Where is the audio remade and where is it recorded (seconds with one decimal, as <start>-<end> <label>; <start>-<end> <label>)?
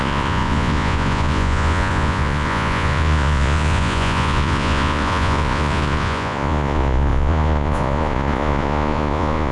0.0-9.5 remade